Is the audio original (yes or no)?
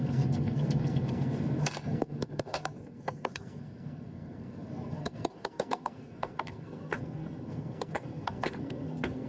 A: no